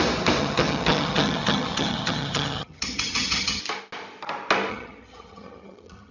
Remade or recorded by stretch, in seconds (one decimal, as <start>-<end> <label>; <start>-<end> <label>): 0.0-0.4 recorded; 0.4-3.6 remade; 3.6-4.7 recorded; 4.7-6.1 remade